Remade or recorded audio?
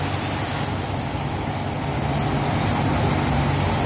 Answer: recorded